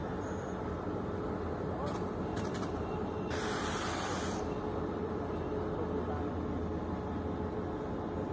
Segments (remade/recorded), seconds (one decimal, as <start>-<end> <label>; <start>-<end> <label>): 0.0-8.3 recorded